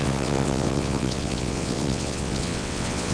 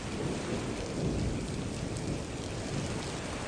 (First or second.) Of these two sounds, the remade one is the first